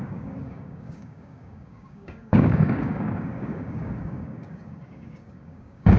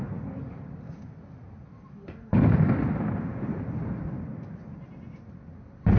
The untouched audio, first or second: second